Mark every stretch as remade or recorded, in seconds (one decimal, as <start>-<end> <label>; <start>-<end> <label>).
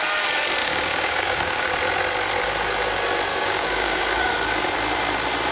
0.0-0.6 recorded; 0.6-1.7 remade; 1.7-3.3 recorded; 3.3-4.3 remade; 4.3-5.5 recorded